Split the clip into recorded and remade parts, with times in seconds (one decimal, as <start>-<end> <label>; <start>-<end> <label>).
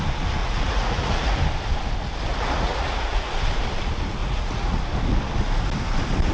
0.0-0.4 recorded; 0.4-1.4 remade; 1.4-2.3 recorded; 2.3-3.3 remade; 3.3-4.2 recorded; 4.2-4.8 remade; 4.8-6.3 recorded